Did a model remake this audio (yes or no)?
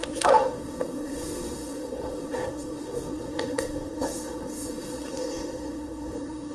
yes